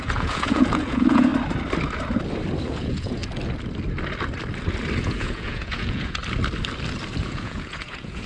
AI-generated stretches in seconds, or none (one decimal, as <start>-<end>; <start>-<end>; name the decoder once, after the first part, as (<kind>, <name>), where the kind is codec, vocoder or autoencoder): 0.0-1.3 (vocoder, Vocos); 2.7-3.2; 5.0-6.2; 7.2-8.3